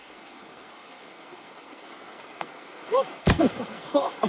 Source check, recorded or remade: remade